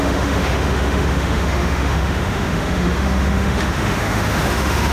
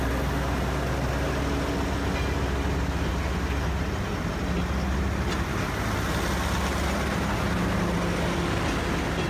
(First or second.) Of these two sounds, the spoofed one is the first